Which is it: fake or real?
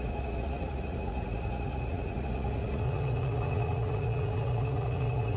fake